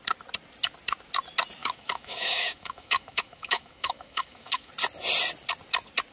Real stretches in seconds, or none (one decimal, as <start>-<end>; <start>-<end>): 0.0-1.6; 4.7-6.1